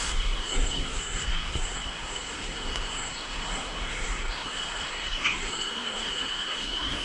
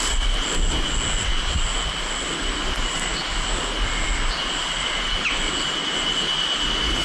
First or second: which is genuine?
second